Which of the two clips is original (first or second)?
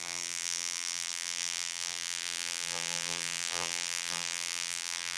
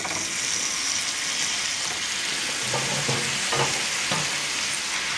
second